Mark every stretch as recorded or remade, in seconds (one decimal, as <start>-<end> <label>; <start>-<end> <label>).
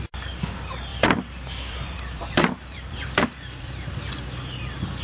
0.0-0.9 recorded; 0.9-3.9 remade; 3.9-5.0 recorded